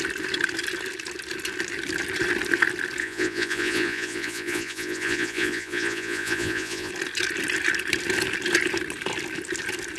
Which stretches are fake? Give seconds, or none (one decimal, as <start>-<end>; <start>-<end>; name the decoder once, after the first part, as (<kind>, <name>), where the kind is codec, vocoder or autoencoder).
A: 3.0-6.9 (vocoder, Vocos)